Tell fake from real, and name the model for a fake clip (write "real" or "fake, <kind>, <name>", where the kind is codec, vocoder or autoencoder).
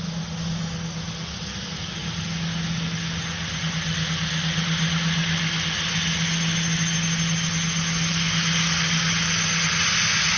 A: real